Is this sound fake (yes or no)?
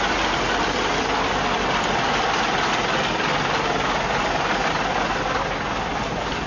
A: no